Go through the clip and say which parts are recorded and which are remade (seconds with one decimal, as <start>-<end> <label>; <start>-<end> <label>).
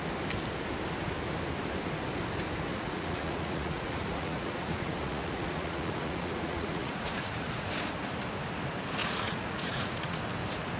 0.0-2.7 recorded; 2.7-7.7 remade; 7.7-9.0 recorded; 9.0-10.2 remade; 10.2-10.8 recorded